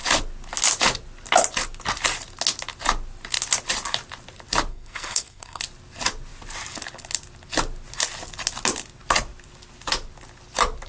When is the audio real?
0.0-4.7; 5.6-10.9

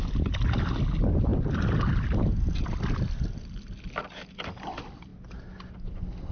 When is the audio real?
0.0-6.3

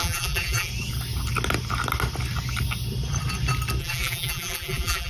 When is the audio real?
0.7-3.8

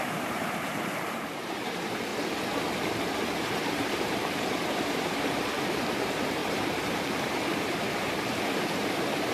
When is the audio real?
2.1-3.3

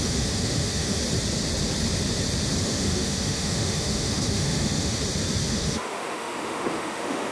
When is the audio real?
1.0-2.6; 5.0-5.5

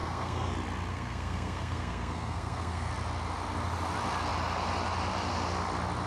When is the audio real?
0.5-0.9; 2.9-6.1

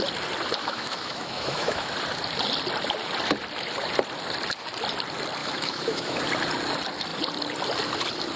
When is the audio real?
0.0-0.6; 1.9-5.4; 6.2-8.4